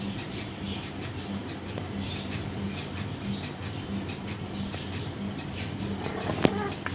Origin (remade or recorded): remade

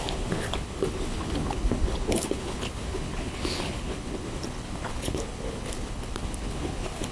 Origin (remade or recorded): remade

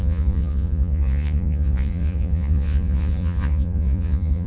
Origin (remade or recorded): remade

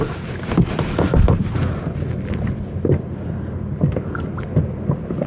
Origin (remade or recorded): recorded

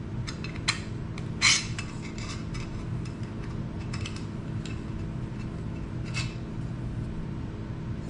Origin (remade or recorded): recorded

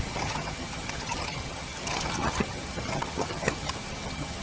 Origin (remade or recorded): remade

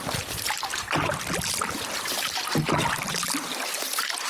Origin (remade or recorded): recorded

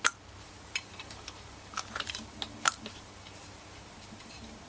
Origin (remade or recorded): remade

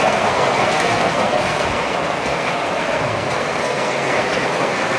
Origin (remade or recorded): remade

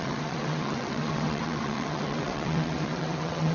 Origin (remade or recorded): remade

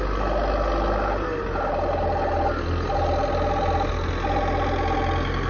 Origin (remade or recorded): recorded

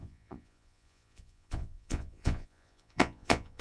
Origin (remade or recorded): remade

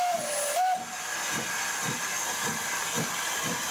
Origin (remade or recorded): recorded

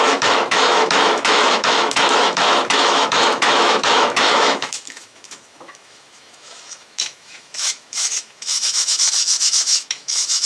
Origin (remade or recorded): remade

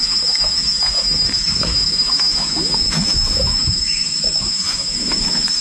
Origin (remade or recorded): remade